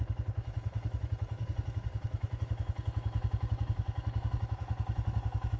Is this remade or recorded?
remade